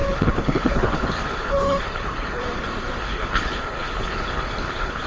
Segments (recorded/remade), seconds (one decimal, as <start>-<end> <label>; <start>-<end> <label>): 0.0-2.4 remade; 2.4-3.0 recorded; 3.0-5.1 remade